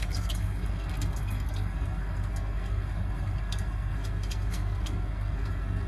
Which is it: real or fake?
fake